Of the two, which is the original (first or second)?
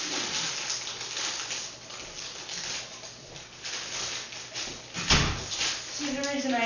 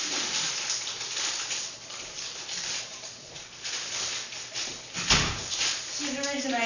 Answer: first